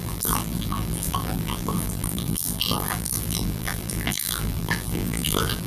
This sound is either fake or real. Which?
fake